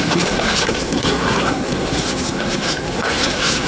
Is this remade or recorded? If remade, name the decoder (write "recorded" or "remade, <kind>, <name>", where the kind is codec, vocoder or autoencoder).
remade, codec, SNAC